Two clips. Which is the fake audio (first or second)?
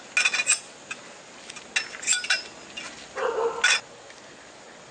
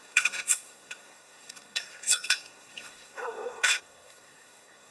second